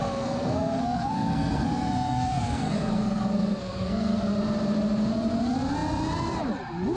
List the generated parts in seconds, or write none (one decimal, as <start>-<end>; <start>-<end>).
0.0-4.2